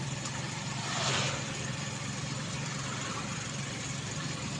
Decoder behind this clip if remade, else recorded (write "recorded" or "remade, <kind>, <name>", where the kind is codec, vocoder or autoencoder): remade, vocoder, BigVGAN v2